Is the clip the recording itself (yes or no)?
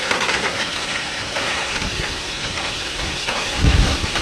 no